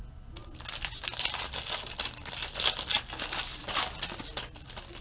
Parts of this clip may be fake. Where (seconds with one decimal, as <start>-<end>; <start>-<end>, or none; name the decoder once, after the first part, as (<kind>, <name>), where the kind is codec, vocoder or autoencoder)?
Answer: none